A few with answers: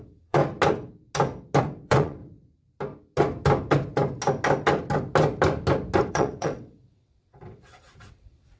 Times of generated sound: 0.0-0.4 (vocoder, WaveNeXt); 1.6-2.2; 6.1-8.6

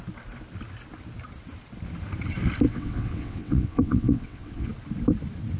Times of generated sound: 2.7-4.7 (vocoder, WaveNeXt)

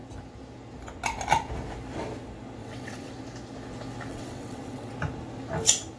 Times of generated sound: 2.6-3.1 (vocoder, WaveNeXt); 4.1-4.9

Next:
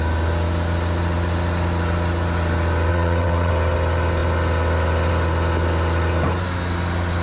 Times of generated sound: 2.9-3.5 (vocoder, WaveNeXt)

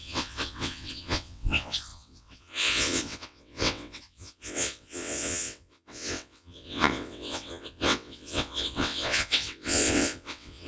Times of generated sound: 0.0-10.7 (vocoder, WaveNeXt)

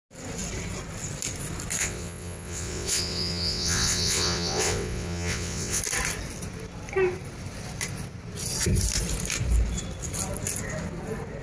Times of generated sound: 1.8-5.8 (vocoder, WaveNeXt)

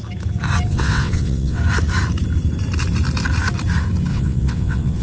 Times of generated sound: 0.7-1.6 (vocoder, WaveNeXt); 4.1-5.0

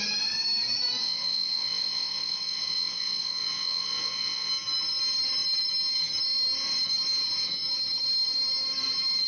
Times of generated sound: 1.0-4.5 (vocoder, WaveNeXt)